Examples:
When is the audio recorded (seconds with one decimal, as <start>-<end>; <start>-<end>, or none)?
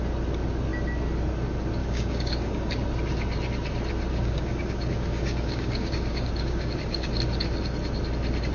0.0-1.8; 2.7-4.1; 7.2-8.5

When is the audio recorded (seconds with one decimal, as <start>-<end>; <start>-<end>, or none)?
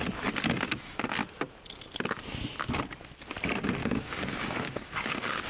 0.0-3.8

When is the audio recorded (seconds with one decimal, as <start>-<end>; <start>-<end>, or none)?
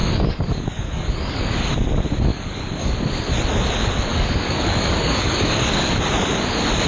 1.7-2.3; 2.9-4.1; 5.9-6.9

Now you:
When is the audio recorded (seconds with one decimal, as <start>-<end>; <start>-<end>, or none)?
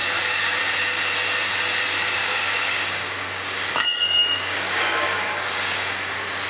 0.6-2.2; 6.1-6.5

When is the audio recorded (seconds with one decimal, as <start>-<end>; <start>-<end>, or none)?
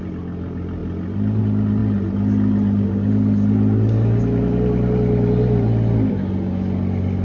0.0-7.2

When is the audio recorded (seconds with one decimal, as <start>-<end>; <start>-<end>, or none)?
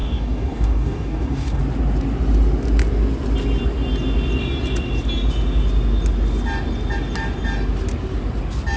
1.6-8.8